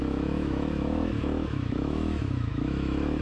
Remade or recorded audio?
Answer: remade